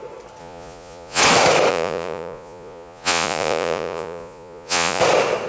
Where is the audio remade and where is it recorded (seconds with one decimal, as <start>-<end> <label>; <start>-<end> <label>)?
0.0-0.4 recorded; 0.4-1.2 remade; 1.2-1.7 recorded; 1.7-5.0 remade; 5.0-5.5 recorded